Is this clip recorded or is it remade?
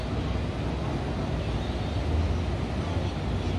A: recorded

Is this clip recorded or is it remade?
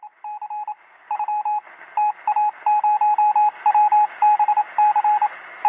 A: recorded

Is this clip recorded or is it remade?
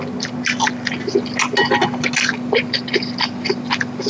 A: recorded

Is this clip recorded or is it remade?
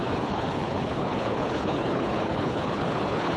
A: remade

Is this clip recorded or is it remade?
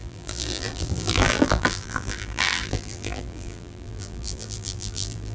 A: remade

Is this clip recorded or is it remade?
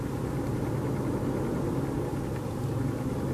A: recorded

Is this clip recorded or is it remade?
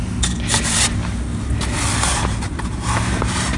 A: recorded